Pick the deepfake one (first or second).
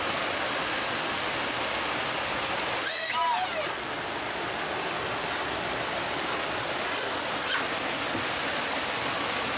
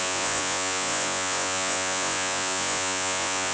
second